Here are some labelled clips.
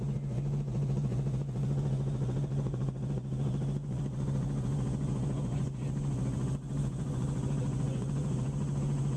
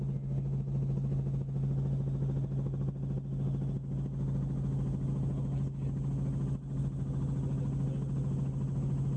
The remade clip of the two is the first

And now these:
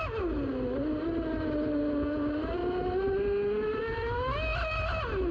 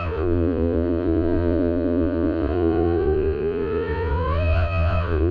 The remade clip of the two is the second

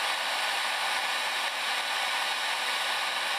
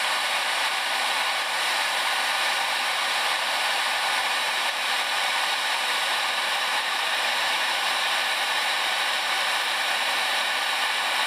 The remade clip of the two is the second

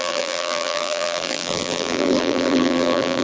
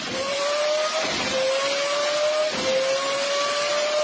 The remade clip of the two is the first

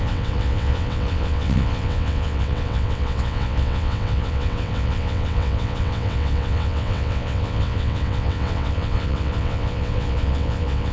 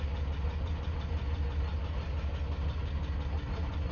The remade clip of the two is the first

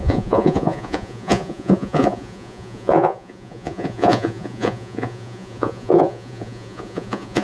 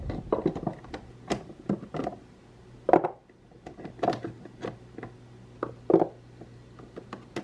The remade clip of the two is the first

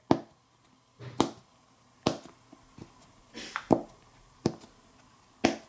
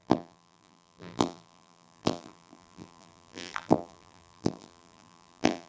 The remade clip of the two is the second